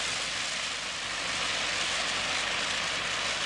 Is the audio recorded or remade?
recorded